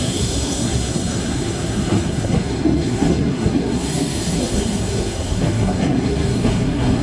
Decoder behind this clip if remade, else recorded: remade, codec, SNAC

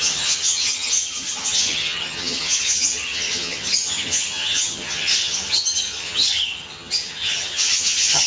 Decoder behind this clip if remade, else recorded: remade, vocoder, HiFi-GAN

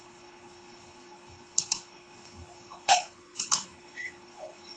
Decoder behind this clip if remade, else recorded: remade, codec, HILCodec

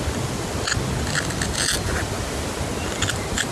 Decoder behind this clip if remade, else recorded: recorded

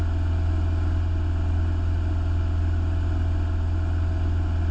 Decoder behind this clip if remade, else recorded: recorded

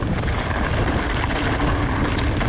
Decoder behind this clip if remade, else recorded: remade, vocoder, BigVGAN v2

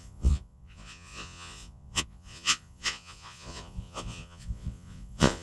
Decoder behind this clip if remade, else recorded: remade, vocoder, Vocos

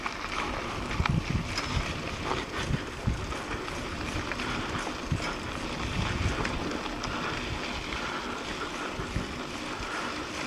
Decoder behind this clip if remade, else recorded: recorded